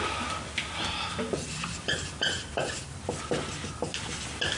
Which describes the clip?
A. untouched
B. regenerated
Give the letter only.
A